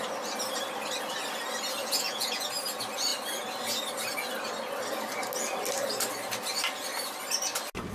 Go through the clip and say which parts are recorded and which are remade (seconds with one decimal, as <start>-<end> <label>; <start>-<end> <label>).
0.0-1.8 recorded; 1.8-2.5 remade; 2.5-7.9 recorded